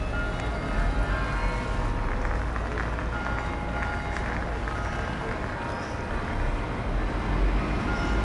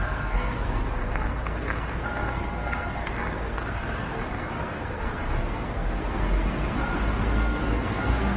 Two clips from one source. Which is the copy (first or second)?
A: second